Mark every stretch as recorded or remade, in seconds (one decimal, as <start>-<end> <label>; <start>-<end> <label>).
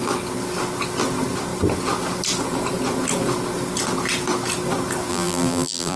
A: 0.0-5.1 recorded; 5.1-6.0 remade